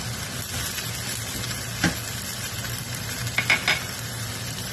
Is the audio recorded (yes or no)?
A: yes